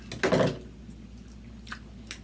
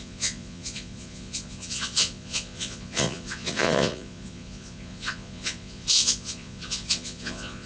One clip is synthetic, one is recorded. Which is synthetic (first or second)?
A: second